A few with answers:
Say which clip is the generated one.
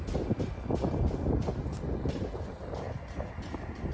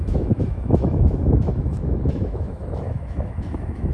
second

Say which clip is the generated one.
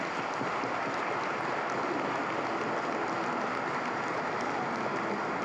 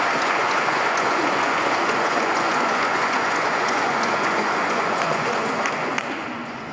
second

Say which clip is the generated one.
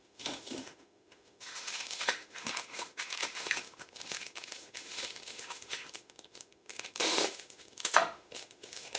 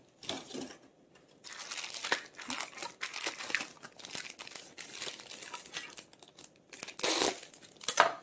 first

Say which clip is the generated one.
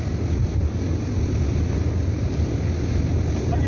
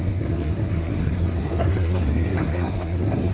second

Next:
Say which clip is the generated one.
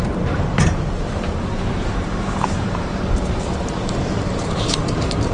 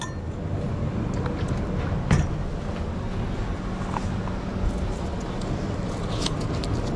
first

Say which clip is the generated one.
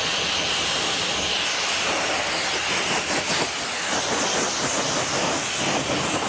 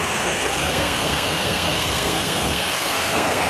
second